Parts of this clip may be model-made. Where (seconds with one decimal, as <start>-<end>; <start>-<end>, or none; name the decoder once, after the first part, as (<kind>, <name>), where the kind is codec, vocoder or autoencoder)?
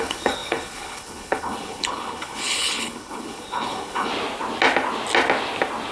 0.0-4.1 (codec, HILCodec)